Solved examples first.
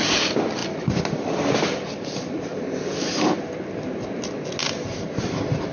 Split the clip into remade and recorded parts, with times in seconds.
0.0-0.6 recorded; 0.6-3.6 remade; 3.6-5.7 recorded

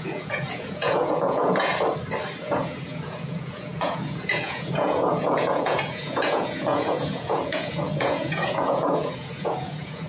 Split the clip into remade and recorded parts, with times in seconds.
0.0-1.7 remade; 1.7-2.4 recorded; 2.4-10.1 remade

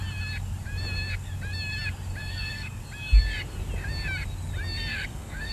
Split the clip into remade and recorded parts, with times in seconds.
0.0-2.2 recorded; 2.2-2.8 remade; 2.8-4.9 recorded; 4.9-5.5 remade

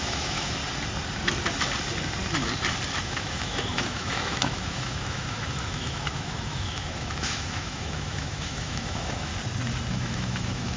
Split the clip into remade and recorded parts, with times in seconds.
0.0-0.6 remade; 0.6-3.0 recorded; 3.0-9.3 remade; 9.3-9.9 recorded; 9.9-10.8 remade

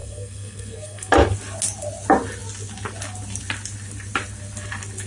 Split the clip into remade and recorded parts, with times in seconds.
0.0-1.1 remade; 1.1-5.1 recorded

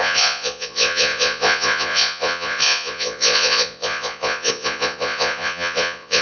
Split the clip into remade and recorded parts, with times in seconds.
0.0-6.2 remade